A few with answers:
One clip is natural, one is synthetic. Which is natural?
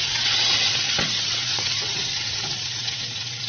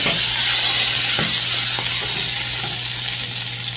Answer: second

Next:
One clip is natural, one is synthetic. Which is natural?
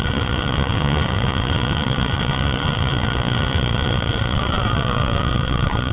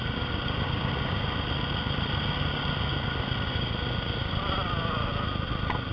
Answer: second